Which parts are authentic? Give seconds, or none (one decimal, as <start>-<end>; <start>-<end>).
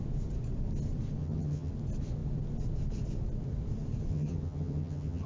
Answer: 0.0-1.2; 1.7-4.1